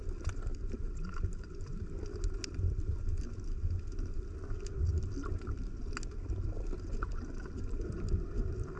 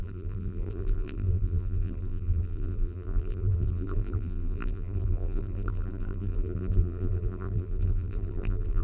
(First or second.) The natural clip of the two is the first